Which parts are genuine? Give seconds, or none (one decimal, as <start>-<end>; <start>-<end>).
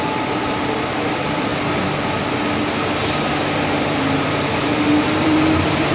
1.5-5.0